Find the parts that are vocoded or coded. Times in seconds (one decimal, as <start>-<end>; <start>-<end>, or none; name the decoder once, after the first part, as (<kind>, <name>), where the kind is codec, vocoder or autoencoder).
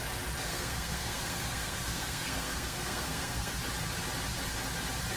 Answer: 0.4-3.5 (codec, SNAC)